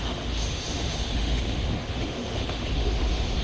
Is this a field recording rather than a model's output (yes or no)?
no